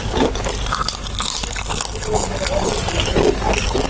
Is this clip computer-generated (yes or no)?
no